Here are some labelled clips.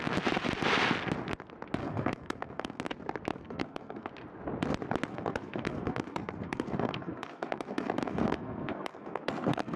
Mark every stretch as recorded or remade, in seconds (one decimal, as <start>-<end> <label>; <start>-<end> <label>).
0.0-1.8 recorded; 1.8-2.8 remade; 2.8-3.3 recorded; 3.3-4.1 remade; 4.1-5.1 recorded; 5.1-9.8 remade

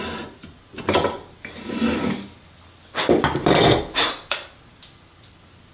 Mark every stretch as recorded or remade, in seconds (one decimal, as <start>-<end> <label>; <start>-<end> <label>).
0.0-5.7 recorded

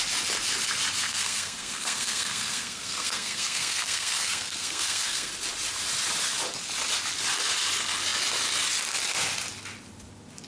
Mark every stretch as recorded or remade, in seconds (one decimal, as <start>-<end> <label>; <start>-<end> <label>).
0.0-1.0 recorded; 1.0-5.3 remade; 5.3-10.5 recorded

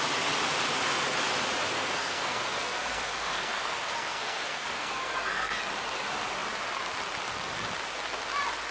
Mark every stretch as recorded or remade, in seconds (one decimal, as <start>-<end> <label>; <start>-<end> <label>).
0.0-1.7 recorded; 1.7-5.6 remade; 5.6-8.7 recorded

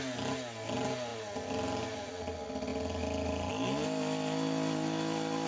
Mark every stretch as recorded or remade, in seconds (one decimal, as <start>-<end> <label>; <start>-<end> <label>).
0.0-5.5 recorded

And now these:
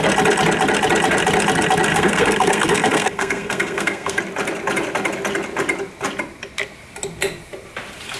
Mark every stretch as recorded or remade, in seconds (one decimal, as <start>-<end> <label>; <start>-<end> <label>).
0.0-1.9 recorded; 1.9-4.2 remade; 4.2-8.2 recorded

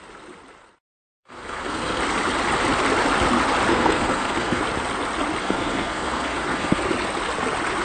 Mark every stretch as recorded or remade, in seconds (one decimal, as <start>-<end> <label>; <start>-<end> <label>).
0.0-1.1 recorded; 1.1-2.0 remade; 2.0-3.7 recorded; 3.7-4.6 remade; 4.6-5.4 recorded; 5.4-6.8 remade; 6.8-7.8 recorded